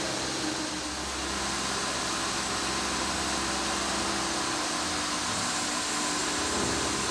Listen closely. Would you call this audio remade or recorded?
recorded